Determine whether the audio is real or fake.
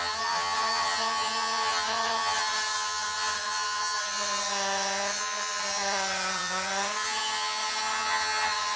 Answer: fake